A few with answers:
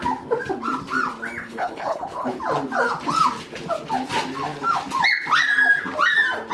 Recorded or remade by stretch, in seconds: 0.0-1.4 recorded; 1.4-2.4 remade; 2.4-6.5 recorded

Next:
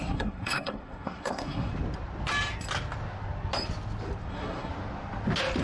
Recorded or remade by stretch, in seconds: 0.0-1.7 remade; 1.7-4.3 recorded; 4.3-4.7 remade; 4.7-5.6 recorded

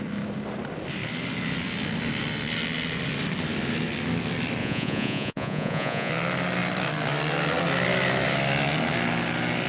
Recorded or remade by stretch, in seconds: 0.0-4.6 recorded; 4.6-6.1 remade; 6.1-9.7 recorded

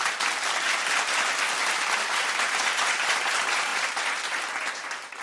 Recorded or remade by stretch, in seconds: 0.0-1.6 recorded; 1.6-3.1 remade; 3.1-5.2 recorded

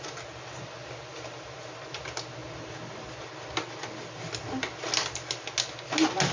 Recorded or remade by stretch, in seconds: 0.0-6.3 recorded